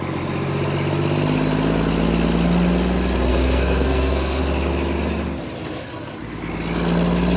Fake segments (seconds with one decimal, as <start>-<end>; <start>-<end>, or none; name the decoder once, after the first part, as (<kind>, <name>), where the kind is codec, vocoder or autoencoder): 3.3-4.4 (codec, SNAC)

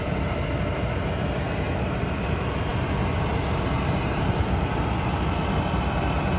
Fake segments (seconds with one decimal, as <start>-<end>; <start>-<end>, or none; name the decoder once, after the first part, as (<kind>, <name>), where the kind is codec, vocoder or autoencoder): none

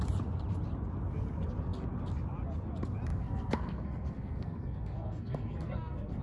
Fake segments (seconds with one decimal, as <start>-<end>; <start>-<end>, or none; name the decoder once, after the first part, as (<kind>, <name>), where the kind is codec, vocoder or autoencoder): 3.1-6.2 (codec, SNAC)

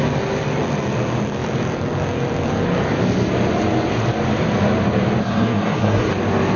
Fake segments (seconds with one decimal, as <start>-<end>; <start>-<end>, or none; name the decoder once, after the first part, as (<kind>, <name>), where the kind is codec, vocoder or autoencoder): 5.2-6.1 (codec, SNAC)

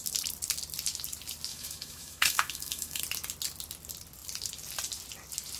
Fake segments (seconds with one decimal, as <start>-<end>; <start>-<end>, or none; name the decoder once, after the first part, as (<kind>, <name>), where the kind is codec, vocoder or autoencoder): 1.5-3.0 (autoencoder, DAC-VAE)

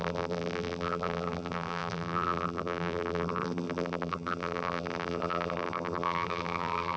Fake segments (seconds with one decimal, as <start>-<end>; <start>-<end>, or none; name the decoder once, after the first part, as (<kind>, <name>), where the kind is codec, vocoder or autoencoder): 0.0-7.0 (vocoder, BigVGAN v2)

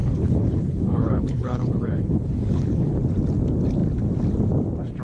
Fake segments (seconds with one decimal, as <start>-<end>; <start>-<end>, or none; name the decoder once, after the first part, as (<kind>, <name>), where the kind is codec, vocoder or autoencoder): 0.0-3.0 (codec, HILCodec)